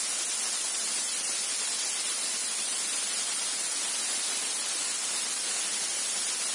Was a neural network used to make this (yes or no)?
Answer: no